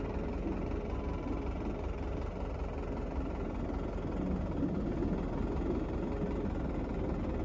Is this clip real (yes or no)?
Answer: yes